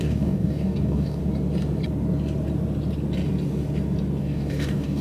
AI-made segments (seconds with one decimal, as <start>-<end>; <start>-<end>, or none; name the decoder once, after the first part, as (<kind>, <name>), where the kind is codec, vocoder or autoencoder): 0.0-1.2 (codec, DAC); 4.2-5.0